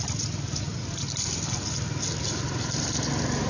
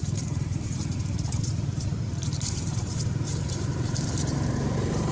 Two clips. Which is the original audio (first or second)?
first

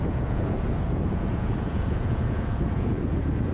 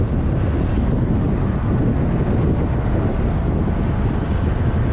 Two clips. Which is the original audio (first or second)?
second